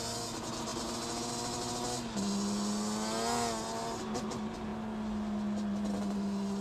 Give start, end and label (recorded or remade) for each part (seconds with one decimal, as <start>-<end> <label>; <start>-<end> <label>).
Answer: 0.0-6.6 recorded